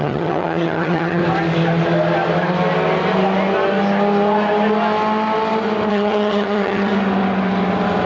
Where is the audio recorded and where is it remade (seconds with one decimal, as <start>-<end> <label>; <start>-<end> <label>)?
0.0-1.2 remade; 1.2-5.9 recorded; 5.9-6.9 remade; 6.9-8.1 recorded